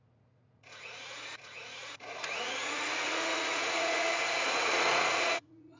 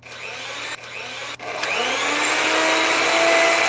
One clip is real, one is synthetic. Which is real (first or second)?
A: second